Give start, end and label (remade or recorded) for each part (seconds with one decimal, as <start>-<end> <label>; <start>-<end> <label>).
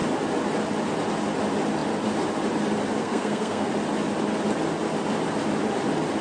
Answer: 0.0-3.0 recorded; 3.0-3.7 remade; 3.7-6.2 recorded